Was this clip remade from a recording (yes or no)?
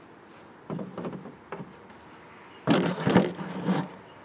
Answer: no